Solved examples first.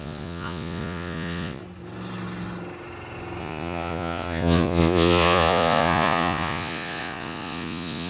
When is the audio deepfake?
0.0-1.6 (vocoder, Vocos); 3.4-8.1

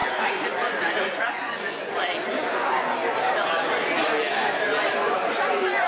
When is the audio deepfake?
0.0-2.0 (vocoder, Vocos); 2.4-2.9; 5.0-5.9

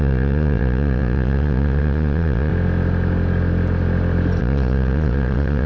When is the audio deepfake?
0.0-2.5 (vocoder, Vocos); 4.4-5.7

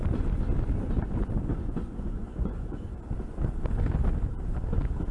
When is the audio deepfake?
1.5-3.0 (vocoder, Vocos)

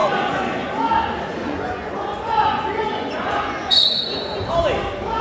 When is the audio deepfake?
0.0-0.7 (vocoder, Vocos); 1.4-4.5